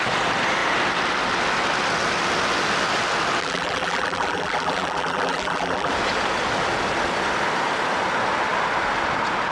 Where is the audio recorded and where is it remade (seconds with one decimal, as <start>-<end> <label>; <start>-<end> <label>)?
0.0-3.4 recorded; 3.4-5.9 remade; 5.9-9.5 recorded